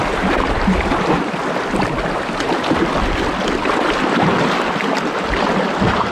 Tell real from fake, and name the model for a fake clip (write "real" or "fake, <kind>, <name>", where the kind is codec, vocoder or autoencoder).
real